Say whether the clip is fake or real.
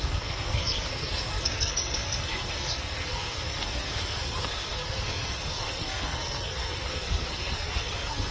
fake